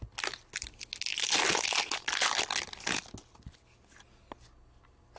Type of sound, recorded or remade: recorded